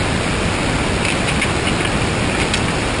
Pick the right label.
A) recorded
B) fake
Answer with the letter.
A